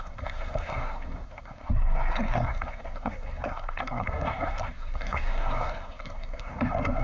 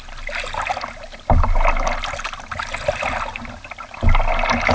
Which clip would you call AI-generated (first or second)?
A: first